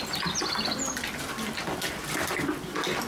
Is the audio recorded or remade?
recorded